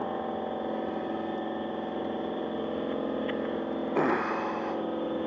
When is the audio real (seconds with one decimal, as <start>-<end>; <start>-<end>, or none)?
0.0-5.3